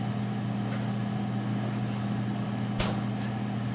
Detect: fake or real real